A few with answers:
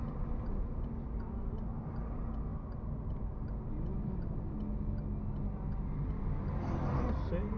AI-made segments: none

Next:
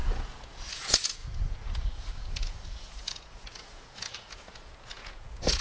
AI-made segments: 0.0-5.6

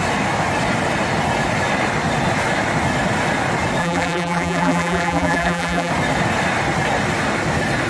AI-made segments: 3.8-5.9

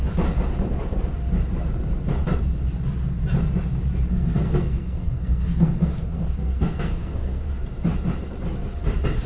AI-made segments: 4.1-7.4

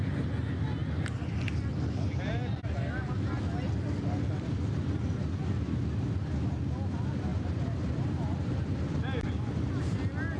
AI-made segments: 7.3-8.8

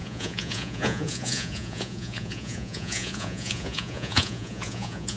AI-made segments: 0.0-5.2

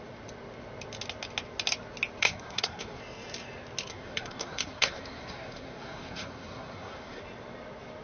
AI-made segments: 2.2-3.0; 3.9-7.2

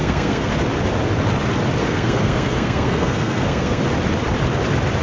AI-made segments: 0.0-0.5; 1.8-3.8